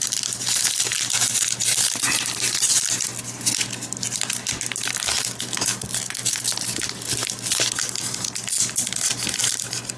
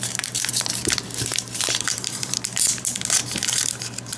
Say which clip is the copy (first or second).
second